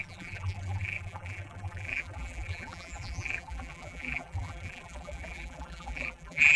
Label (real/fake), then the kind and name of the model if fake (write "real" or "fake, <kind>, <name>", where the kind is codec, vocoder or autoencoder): fake, vocoder, BigVGAN v2